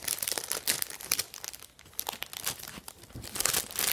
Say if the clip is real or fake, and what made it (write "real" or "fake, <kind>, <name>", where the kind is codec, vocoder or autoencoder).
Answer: real